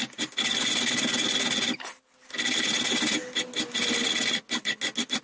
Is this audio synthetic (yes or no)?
no